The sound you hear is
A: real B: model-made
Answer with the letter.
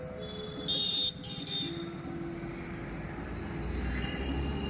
A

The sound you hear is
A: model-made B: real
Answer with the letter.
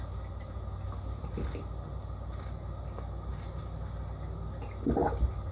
B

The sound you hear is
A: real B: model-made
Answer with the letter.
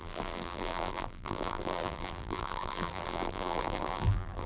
B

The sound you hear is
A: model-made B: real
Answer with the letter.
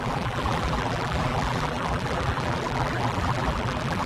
A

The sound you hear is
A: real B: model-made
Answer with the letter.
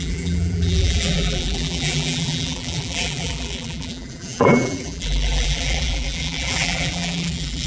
B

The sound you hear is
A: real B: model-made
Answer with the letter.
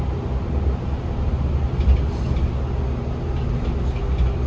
A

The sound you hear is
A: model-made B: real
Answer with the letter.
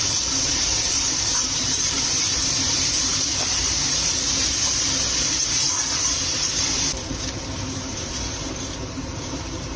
A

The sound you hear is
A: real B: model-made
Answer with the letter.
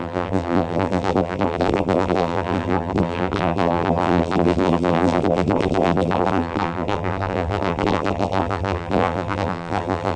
B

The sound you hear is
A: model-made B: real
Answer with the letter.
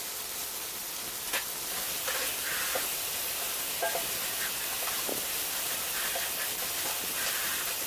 B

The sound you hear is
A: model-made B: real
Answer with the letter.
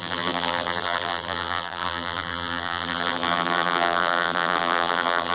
A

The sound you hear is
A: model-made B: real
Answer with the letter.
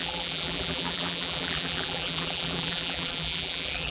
A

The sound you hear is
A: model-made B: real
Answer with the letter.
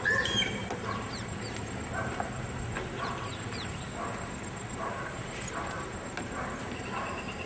B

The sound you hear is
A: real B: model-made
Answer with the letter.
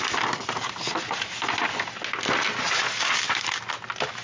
A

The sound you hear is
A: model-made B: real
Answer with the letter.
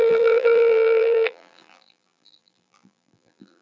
A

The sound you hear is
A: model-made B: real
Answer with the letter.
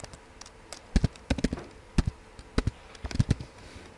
B